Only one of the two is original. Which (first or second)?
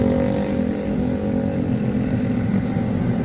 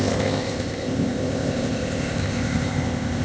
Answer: first